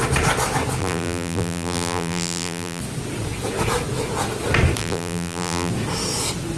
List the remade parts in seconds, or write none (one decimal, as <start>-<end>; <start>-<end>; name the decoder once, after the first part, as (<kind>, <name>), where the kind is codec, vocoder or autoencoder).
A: 0.8-2.8 (vocoder, BigVGAN v2); 4.8-5.7